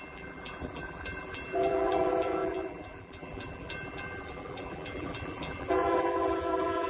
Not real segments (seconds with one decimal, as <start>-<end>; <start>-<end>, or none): 0.0-6.9